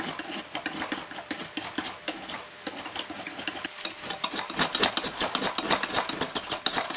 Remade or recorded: recorded